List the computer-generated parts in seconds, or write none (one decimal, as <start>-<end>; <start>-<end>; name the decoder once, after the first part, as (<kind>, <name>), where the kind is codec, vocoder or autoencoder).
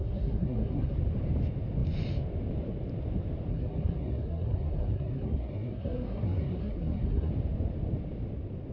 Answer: 0.0-1.0 (codec, SNAC); 3.5-7.3